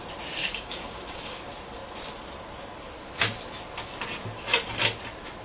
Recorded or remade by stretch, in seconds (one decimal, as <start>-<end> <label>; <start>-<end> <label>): 0.0-0.4 recorded; 0.4-1.4 remade; 1.4-5.4 recorded